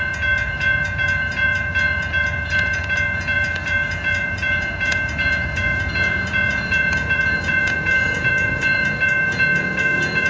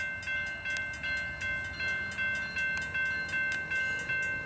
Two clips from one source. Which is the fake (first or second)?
first